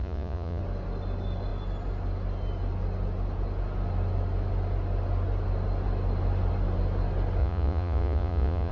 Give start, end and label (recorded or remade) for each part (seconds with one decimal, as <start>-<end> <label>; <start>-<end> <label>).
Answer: 0.0-0.6 remade; 0.6-7.4 recorded; 7.4-8.7 remade